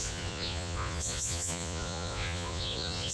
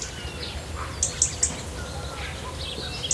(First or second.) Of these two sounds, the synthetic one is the first